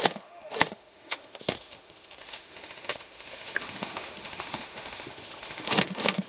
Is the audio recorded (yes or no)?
no